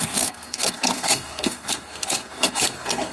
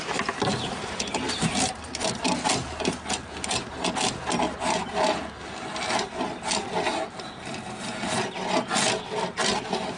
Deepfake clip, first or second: first